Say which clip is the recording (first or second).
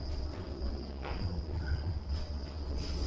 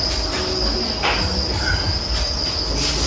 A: second